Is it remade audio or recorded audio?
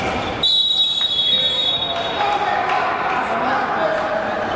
recorded